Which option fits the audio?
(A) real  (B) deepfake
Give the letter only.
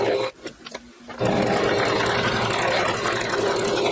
A